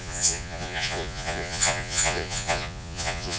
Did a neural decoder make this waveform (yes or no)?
yes